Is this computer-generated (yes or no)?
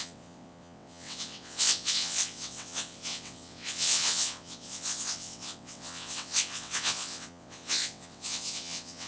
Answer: yes